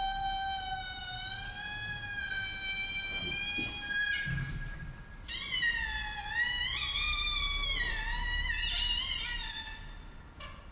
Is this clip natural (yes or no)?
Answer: yes